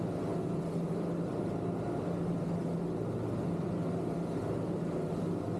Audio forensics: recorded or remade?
recorded